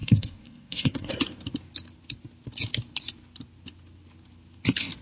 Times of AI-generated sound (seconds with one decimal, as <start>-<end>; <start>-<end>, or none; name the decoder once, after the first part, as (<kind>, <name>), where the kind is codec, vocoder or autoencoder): 0.0-1.1 (codec, SNAC)